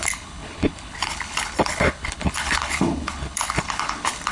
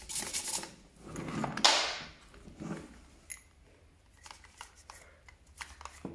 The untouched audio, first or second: second